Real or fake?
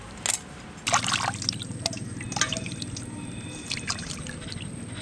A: real